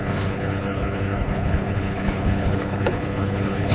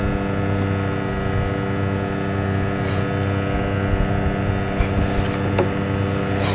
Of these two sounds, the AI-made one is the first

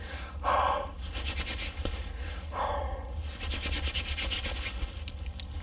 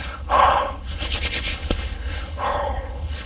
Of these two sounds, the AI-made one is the second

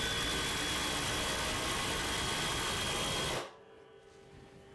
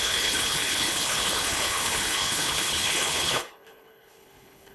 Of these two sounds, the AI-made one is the second